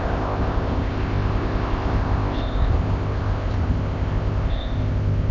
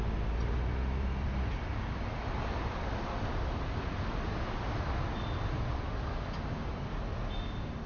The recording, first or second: second